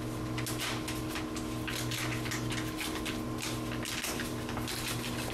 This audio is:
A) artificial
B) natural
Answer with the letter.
B